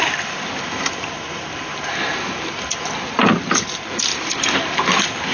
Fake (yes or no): no